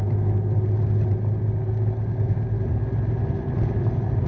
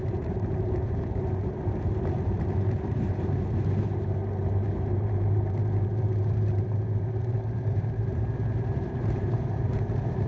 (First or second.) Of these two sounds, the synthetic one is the second